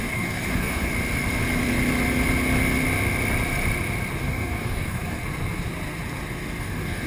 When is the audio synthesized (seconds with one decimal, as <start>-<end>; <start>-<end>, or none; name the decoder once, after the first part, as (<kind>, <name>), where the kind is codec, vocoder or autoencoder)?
0.0-0.9 (codec, DAC); 4.2-5.2; 6.6-7.1

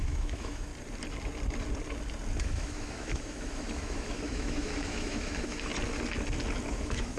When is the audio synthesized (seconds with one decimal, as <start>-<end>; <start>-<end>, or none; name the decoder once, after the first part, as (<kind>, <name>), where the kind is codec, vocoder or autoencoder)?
0.0-0.7 (autoencoder, DAC-VAE); 2.4-5.7; 6.7-7.2

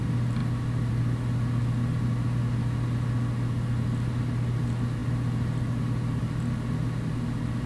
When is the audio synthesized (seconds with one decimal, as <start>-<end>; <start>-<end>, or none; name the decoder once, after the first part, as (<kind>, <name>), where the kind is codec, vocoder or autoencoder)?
none

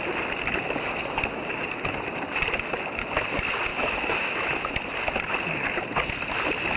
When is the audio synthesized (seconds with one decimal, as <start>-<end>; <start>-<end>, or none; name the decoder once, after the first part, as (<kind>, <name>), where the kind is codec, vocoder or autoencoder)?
3.7-4.7 (autoencoder, DAC-VAE)

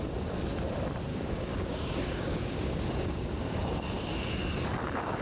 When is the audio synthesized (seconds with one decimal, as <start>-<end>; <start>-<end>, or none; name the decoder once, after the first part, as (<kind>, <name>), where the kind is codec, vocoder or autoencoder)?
1.1-3.6 (codec, DAC)